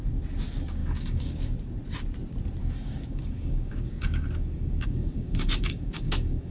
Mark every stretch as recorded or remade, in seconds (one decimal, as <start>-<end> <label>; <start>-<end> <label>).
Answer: 0.0-0.8 recorded; 0.8-1.5 remade; 1.5-2.6 recorded; 2.6-6.5 remade